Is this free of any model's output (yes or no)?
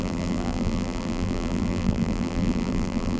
no